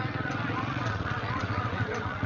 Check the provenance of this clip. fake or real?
fake